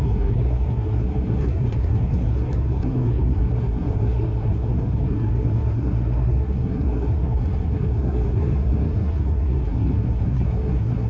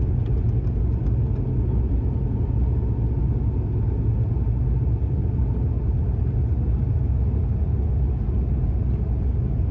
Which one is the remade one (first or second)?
first